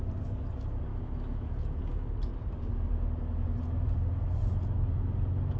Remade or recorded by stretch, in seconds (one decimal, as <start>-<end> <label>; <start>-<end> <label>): 0.0-0.9 recorded; 0.9-1.5 remade; 1.5-5.6 recorded